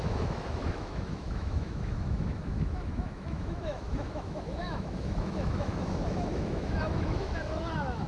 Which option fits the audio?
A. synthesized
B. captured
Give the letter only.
A